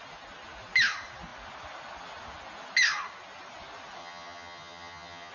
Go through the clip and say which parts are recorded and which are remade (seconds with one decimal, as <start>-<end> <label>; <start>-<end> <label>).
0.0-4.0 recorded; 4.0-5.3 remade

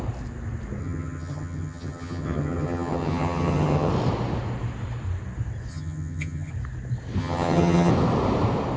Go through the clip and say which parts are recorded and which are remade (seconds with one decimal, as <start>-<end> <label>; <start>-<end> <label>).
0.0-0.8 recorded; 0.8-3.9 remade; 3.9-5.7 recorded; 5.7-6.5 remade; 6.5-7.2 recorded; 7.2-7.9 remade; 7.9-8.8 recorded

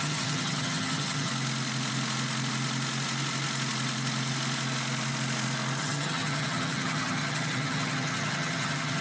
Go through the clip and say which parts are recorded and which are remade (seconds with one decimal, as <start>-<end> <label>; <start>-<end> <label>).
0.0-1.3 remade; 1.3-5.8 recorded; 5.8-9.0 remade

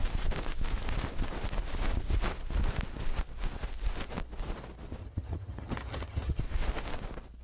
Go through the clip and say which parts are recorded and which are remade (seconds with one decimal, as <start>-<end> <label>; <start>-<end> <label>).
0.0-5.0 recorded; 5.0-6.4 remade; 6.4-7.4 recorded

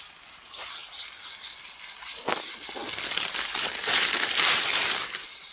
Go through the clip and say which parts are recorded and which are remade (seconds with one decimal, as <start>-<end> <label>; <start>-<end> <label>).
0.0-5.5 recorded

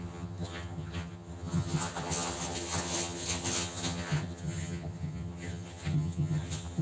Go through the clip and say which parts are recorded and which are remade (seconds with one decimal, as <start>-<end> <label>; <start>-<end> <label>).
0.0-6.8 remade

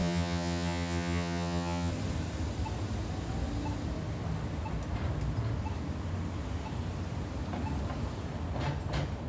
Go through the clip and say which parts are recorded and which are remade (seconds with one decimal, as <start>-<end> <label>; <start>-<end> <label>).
0.0-1.9 remade; 1.9-9.3 recorded